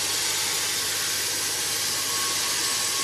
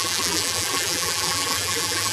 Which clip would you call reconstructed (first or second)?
second